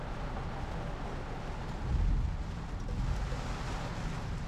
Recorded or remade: recorded